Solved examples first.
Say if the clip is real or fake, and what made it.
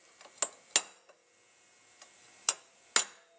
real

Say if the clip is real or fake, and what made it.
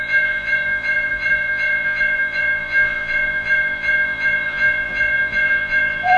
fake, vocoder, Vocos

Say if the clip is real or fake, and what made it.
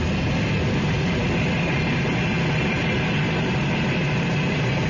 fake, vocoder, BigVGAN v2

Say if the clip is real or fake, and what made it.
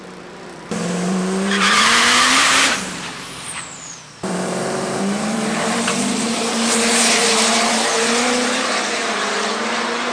fake, vocoder, BigVGAN v2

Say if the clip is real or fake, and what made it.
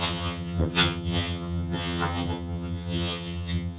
fake, vocoder, HiFi-GAN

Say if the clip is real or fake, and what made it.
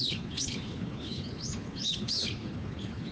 fake, codec, HILCodec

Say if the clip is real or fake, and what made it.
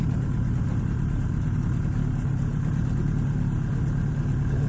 real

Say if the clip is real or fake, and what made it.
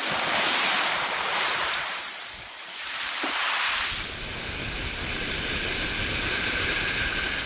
fake, vocoder, BigVGAN v2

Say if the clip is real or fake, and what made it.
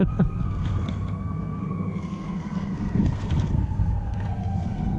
fake, codec, SNAC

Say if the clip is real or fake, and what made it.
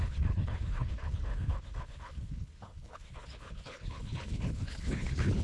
fake, codec, HILCodec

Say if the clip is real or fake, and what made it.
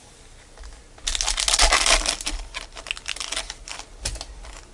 real